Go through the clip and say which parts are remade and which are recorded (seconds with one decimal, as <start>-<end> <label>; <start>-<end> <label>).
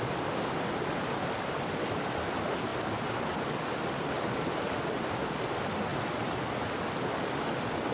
0.0-7.9 recorded